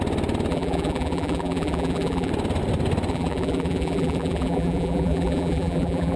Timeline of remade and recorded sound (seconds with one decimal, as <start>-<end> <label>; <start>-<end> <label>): 0.0-0.5 recorded; 0.5-2.3 remade; 2.3-3.1 recorded; 3.1-6.2 remade